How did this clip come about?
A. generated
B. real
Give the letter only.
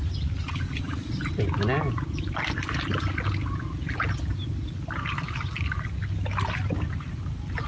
B